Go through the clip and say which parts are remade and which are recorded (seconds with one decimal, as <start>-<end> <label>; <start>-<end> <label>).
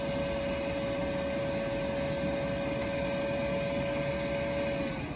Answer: 0.0-5.2 recorded